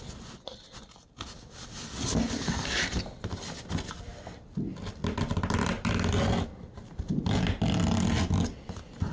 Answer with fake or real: real